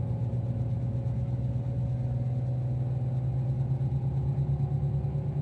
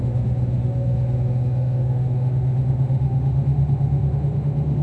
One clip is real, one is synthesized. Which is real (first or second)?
first